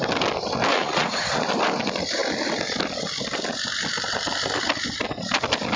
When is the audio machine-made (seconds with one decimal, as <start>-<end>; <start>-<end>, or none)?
0.7-1.4